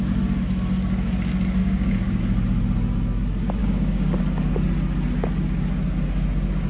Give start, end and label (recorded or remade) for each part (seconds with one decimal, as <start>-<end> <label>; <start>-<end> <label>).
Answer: 0.0-1.6 recorded; 1.6-2.2 remade; 2.2-3.6 recorded; 3.6-4.2 remade; 4.2-6.7 recorded